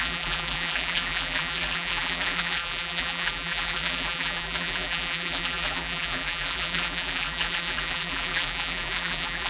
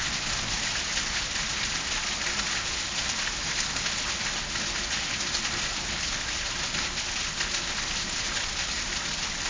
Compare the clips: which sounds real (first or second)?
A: second